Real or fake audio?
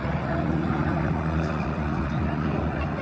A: fake